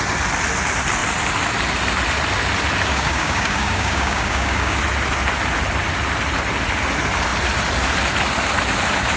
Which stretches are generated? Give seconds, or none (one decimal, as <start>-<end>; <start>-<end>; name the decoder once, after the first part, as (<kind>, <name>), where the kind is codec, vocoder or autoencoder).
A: 2.9-4.8 (codec, DAC)

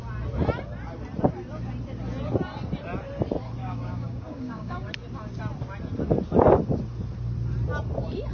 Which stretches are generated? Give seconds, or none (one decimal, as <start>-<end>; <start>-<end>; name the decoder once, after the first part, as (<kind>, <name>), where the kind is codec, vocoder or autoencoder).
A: 3.6-4.9 (codec, DAC)

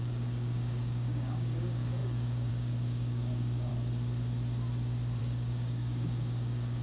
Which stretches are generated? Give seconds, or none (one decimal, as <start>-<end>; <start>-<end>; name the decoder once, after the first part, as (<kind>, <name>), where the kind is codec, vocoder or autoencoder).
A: 0.0-3.7 (codec, DAC); 5.2-6.8